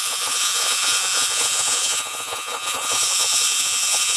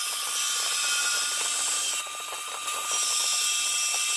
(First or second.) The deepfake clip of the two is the first